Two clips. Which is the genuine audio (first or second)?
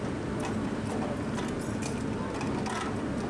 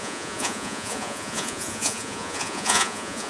first